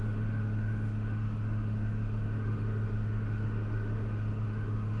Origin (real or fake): fake